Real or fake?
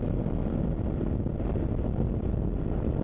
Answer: real